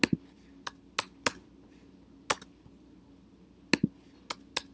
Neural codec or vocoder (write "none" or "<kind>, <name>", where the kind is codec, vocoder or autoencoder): none